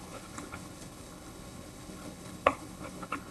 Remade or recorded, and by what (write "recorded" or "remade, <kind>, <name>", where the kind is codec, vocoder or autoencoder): remade, codec, HILCodec